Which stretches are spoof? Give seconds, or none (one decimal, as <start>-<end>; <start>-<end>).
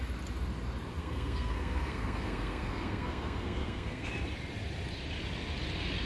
1.0-4.1